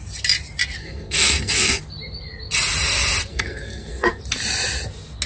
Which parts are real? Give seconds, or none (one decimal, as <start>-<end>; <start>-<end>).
0.0-0.8; 1.8-3.3; 4.2-5.3